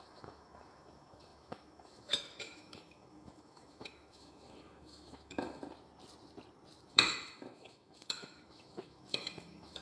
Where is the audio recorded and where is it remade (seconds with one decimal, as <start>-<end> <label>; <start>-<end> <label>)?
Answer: 0.0-5.6 remade; 5.6-6.9 recorded; 6.9-9.8 remade